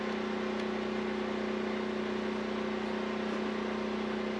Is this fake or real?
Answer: real